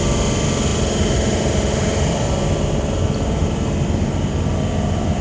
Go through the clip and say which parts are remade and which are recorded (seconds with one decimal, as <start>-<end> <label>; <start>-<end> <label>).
0.0-0.7 recorded; 0.7-1.9 remade; 1.9-3.4 recorded; 3.4-4.1 remade; 4.1-5.2 recorded